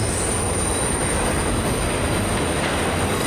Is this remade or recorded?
recorded